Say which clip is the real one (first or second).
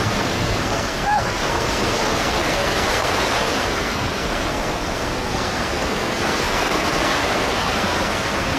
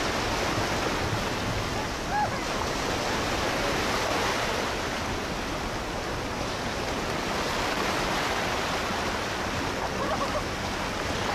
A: second